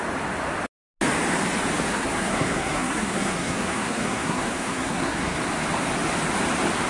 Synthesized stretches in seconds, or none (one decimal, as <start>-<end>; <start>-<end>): 1.9-5.4